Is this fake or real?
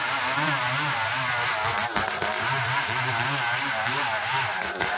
real